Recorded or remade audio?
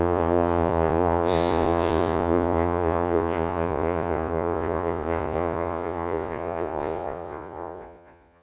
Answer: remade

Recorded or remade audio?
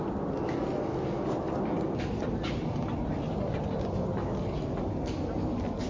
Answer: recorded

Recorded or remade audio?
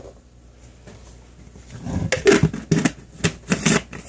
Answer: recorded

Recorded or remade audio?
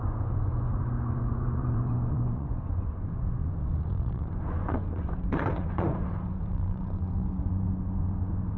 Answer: remade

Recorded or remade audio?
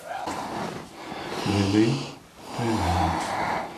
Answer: recorded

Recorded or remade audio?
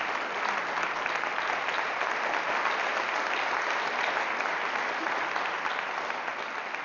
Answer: recorded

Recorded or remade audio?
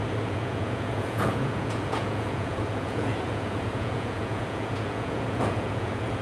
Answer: remade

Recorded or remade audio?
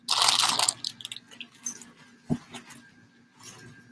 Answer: recorded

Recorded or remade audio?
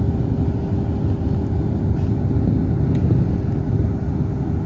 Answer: recorded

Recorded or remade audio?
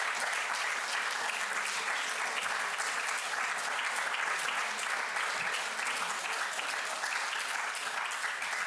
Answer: recorded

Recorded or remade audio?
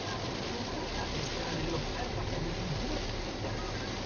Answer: recorded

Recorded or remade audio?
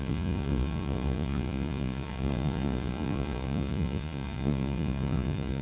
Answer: remade